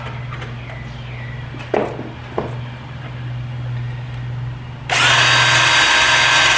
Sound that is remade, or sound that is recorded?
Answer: recorded